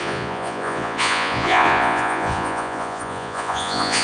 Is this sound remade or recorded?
remade